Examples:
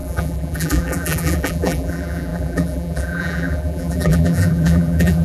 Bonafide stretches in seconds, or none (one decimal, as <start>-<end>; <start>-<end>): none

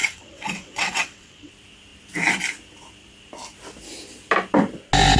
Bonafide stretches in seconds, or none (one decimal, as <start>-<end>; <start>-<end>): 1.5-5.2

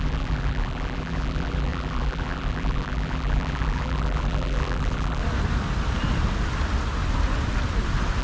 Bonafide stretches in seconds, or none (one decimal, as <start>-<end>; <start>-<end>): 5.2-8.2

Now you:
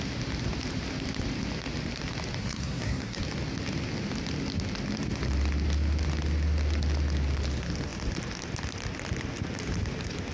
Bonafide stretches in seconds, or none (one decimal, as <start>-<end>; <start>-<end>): 0.0-2.4; 3.2-10.3